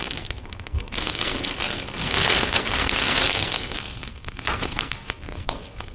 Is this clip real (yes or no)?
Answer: no